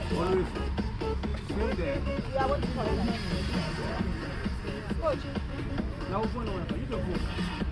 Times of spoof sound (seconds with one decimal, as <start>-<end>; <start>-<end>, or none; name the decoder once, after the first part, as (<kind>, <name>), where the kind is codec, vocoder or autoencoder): none